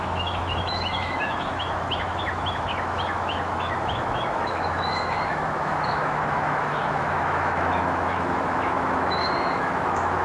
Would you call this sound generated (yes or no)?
yes